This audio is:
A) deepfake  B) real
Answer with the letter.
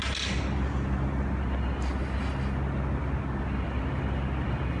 B